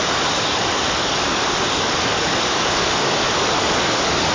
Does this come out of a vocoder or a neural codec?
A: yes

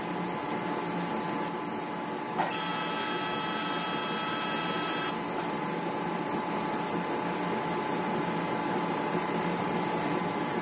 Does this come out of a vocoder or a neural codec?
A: no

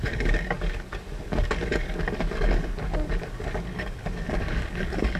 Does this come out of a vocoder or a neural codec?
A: yes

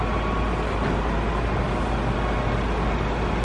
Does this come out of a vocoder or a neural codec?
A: no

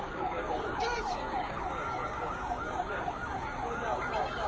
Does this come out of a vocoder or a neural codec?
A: yes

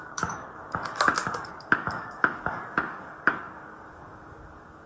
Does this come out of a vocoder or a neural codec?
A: yes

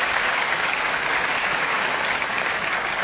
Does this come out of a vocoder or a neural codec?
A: yes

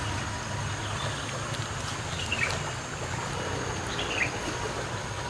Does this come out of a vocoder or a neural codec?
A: no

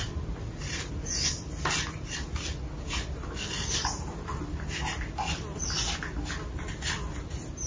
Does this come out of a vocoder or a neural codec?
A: no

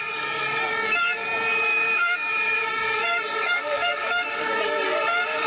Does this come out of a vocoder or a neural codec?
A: yes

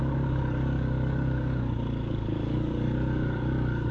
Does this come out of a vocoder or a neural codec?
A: yes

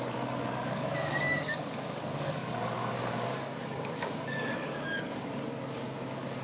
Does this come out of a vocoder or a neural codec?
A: yes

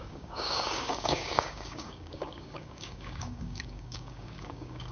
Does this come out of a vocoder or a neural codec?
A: yes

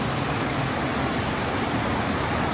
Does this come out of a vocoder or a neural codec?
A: no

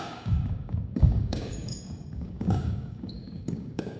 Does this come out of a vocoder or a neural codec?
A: yes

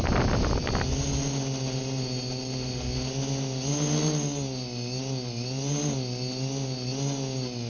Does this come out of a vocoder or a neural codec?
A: no